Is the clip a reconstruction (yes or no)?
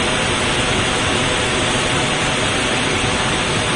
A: no